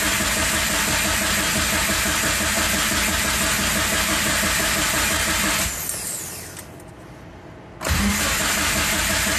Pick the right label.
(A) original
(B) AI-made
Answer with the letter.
A